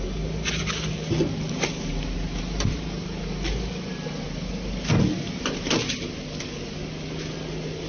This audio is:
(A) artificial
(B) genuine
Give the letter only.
B